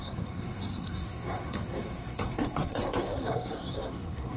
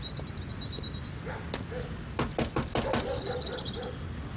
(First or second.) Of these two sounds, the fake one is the first